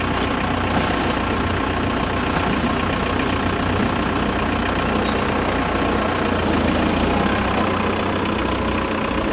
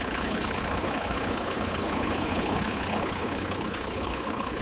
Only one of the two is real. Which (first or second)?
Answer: first